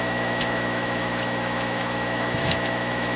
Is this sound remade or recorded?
remade